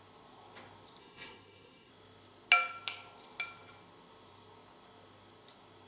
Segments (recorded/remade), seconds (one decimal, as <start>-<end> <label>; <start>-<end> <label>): 0.0-1.0 recorded; 1.0-1.9 remade; 1.9-5.9 recorded